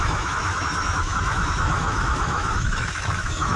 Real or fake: fake